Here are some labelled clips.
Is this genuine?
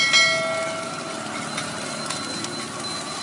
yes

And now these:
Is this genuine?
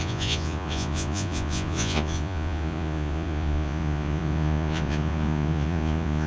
no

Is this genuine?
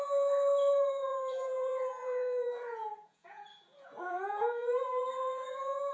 no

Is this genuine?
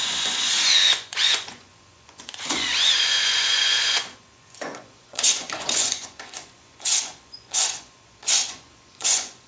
no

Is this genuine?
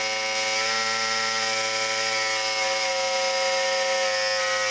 yes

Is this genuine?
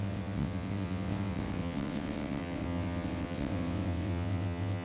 no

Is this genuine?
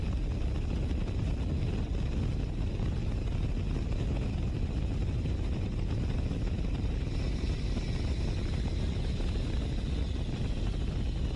yes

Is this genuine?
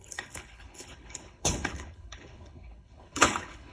no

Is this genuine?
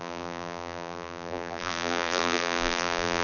no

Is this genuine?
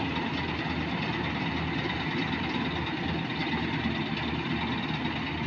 yes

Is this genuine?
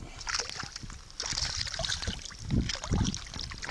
yes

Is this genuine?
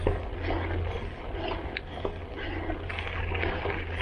yes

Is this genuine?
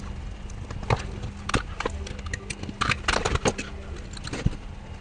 yes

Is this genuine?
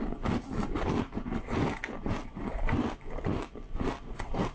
yes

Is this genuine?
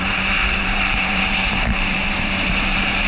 no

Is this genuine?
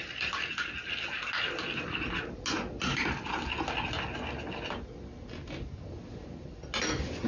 yes